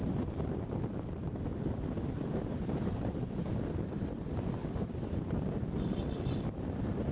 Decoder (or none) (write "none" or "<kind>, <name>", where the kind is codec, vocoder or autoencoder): vocoder, BigVGAN v2